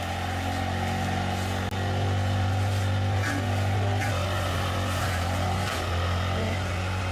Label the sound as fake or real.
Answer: real